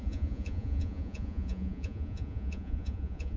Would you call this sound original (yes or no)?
no